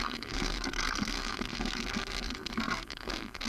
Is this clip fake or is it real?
fake